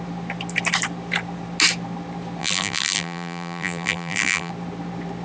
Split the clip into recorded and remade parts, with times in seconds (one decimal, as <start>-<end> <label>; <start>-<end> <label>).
0.0-2.4 recorded; 2.4-4.5 remade; 4.5-5.2 recorded